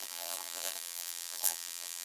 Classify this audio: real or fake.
fake